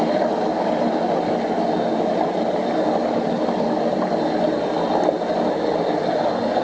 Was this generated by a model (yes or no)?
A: no